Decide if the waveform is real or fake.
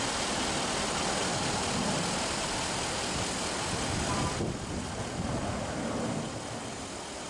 real